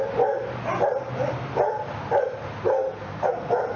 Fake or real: real